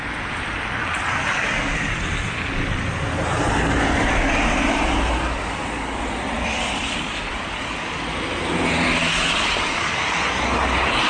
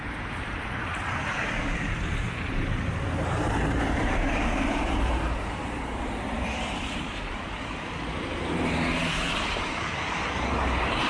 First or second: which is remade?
second